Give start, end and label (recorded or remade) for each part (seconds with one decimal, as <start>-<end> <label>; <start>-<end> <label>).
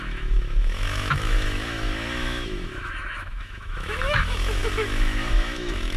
0.0-6.0 remade